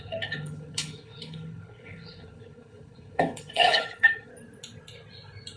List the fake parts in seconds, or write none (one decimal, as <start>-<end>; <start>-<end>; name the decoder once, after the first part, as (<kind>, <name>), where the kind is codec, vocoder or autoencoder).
0.0-4.3 (codec, HILCodec)